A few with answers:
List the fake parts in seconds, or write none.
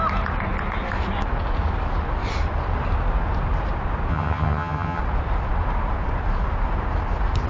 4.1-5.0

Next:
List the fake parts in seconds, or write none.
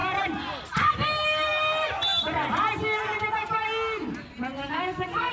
4.6-5.3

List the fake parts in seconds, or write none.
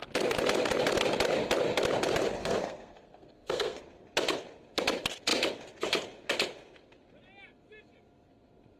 2.4-3.8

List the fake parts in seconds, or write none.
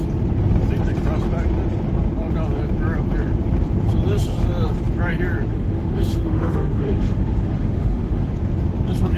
5.5-8.3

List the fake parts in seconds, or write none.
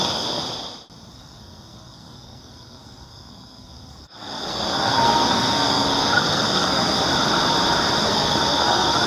0.0-0.4; 1.1-7.0; 8.0-9.1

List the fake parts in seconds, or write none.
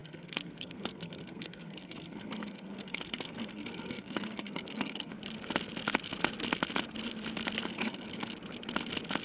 0.0-5.1; 7.7-8.3